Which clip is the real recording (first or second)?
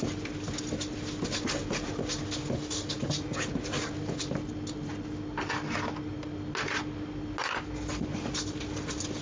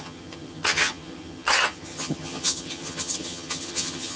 first